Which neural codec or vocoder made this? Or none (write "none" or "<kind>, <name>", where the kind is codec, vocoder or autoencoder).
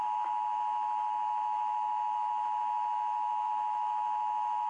autoencoder, DAC-VAE